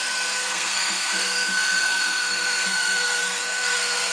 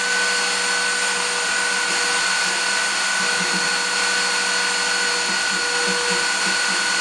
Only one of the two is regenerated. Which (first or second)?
first